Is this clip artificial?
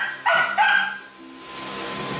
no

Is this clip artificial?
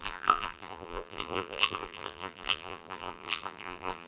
yes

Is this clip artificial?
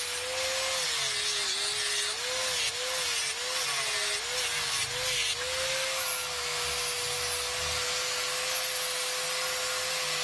no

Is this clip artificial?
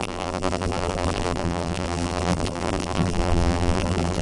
yes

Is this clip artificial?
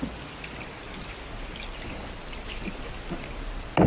no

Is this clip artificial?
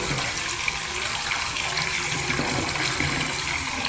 no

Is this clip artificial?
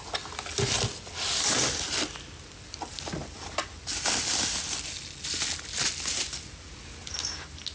no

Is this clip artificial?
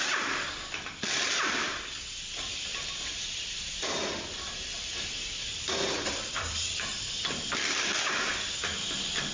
yes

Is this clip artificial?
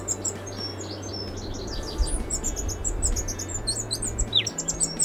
no